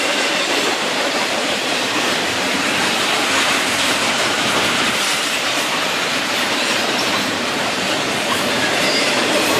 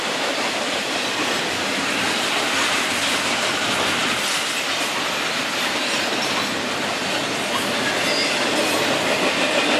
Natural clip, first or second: second